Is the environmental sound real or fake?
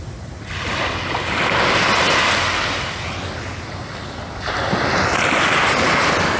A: real